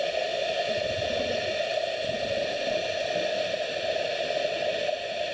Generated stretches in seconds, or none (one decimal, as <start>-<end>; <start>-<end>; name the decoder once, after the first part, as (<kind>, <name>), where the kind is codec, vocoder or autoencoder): 1.7-5.3 (vocoder, BigVGAN v2)

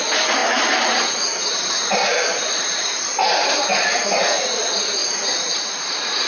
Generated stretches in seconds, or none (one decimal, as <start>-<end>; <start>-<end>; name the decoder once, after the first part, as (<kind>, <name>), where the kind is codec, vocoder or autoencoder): 0.4-1.7 (vocoder, BigVGAN v2); 2.3-3.6; 5.0-6.3

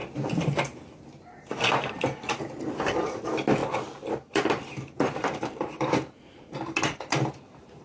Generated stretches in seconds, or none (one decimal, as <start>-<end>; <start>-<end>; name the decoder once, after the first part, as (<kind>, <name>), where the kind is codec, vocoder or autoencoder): 3.6-7.8 (vocoder, BigVGAN v2)

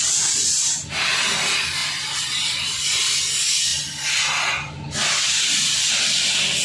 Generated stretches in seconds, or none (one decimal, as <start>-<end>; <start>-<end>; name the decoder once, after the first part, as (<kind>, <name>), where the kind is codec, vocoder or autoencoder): 1.8-3.0 (vocoder, BigVGAN v2)

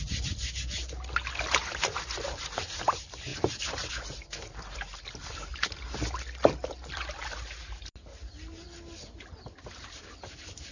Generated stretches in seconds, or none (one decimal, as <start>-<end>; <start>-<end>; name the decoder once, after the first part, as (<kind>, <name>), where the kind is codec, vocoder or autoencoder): 3.3-3.9 (vocoder, BigVGAN v2)

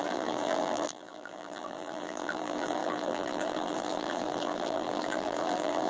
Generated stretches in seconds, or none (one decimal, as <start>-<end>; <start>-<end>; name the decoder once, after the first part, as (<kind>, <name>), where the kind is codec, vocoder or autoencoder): 0.0-5.9 (vocoder, BigVGAN v2)